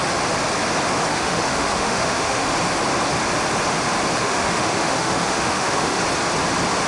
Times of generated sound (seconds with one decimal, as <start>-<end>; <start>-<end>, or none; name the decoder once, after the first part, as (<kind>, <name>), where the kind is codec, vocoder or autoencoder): 1.1-2.5 (autoencoder, DAC-VAE); 4.2-6.0